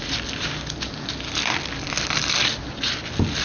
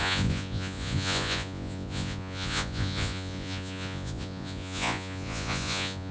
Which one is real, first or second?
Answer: first